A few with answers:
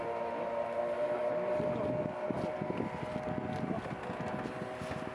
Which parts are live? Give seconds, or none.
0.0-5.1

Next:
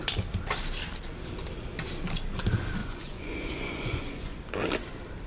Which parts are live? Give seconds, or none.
0.0-2.8; 4.4-5.3

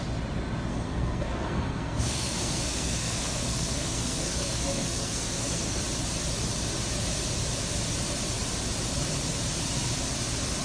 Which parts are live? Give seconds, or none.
0.0-0.7; 5.8-10.6

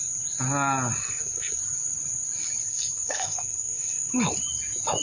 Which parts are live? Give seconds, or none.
0.0-1.0; 1.6-2.7; 4.1-5.0